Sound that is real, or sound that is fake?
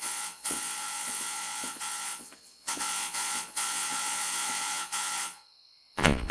fake